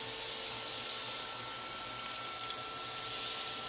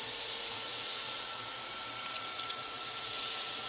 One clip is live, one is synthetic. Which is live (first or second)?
first